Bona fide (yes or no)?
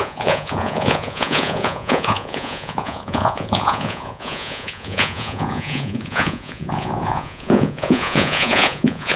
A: no